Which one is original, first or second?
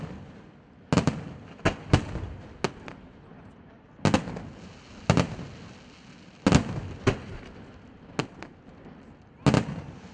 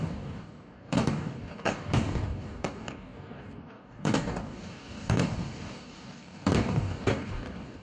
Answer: first